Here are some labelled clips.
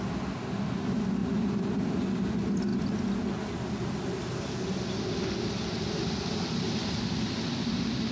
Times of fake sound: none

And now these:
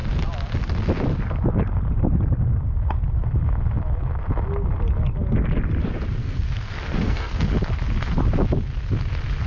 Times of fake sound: 6.2-7.5 (codec, SNAC)

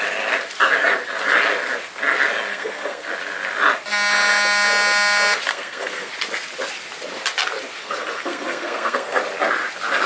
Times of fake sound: 2.5-3.1 (codec, SNAC); 5.5-6.1; 7.8-9.2

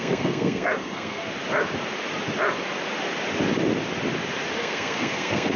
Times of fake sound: 0.0-1.2 (codec, SNAC); 4.6-5.6

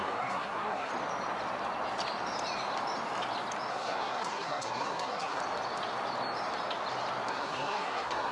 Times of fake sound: 0.0-0.9 (codec, SNAC); 3.7-5.4; 7.3-8.3

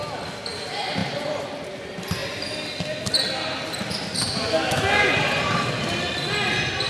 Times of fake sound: none

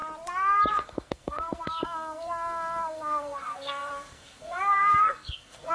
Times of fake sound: 0.7-5.7 (codec, SNAC)

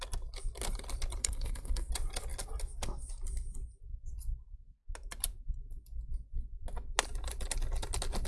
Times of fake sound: 1.2-1.9 (codec, SNAC)